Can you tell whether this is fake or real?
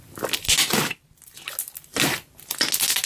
real